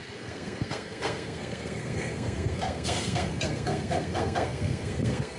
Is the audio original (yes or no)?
no